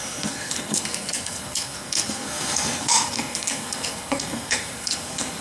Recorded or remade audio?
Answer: remade